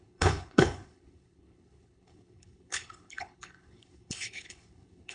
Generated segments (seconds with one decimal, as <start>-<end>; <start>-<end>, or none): 0.0-5.1